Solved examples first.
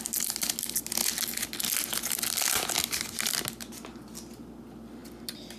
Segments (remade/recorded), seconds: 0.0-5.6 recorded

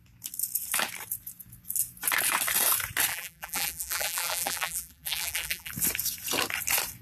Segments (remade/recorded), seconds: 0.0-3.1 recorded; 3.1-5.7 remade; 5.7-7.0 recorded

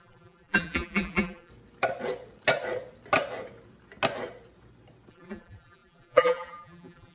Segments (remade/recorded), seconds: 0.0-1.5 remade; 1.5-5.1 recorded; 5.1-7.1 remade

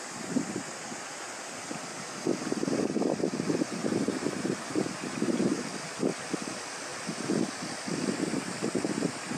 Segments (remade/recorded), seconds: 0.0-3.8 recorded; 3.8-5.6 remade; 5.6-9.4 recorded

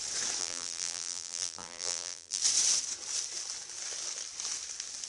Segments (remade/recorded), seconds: 0.0-0.4 recorded; 0.4-2.4 remade; 2.4-5.1 recorded

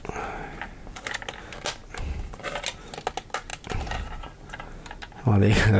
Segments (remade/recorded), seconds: 0.0-5.8 recorded

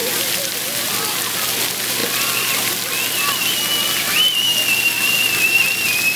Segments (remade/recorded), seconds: 0.0-0.9 remade; 0.9-6.2 recorded